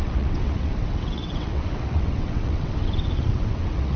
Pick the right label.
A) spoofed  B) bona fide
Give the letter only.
A